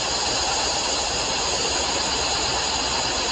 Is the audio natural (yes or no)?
no